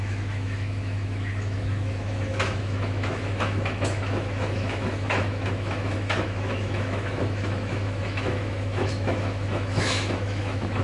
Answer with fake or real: fake